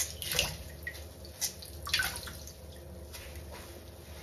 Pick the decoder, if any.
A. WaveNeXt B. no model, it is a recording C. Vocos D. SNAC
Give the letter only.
B